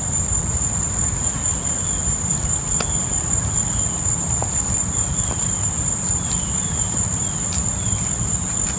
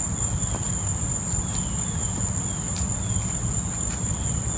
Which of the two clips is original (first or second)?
second